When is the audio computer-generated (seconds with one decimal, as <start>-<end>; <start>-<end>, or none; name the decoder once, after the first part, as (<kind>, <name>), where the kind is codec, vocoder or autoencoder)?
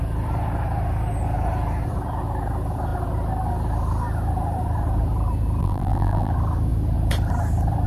5.6-6.3 (vocoder, BigVGAN v2)